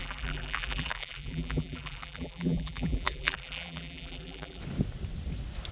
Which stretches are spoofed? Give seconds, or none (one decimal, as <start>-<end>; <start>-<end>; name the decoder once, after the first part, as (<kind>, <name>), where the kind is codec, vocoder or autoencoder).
0.0-4.6 (vocoder, BigVGAN v2)